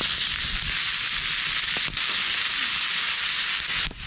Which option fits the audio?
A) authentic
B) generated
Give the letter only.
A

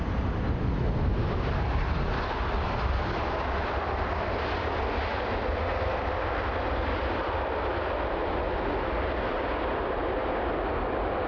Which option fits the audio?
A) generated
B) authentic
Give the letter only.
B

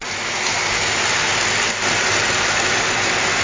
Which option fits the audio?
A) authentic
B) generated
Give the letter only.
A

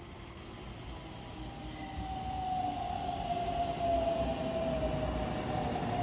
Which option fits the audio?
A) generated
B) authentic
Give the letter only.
B